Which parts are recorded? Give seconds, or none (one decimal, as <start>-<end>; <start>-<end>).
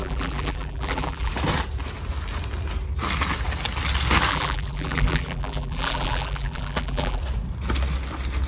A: 1.3-4.3; 7.2-8.5